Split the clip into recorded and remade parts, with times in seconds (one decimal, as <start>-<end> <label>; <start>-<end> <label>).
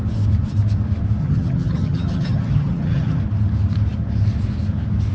0.0-1.2 recorded; 1.2-3.2 remade; 3.2-5.1 recorded